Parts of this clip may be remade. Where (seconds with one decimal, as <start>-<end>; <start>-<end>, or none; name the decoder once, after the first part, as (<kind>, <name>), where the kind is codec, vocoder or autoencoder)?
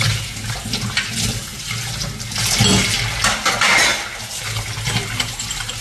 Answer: none